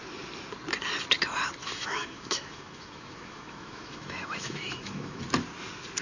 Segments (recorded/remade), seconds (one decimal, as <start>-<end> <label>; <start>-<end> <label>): 0.0-1.6 recorded; 1.6-5.2 remade; 5.2-6.0 recorded